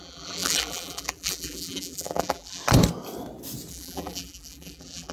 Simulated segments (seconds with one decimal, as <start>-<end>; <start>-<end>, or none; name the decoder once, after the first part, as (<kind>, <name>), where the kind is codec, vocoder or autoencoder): 0.0-2.6 (vocoder, BigVGAN v2); 3.7-5.1